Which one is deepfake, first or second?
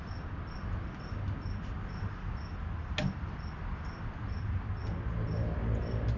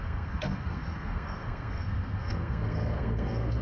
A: second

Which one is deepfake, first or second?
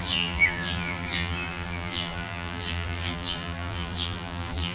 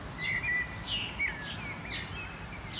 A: first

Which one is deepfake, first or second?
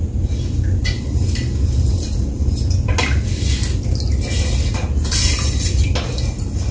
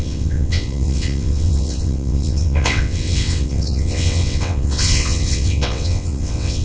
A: second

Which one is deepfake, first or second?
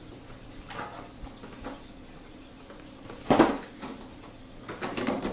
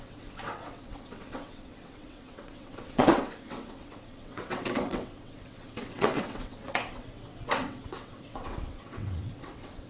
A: second